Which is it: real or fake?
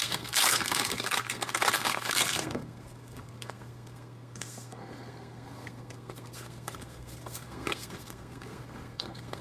fake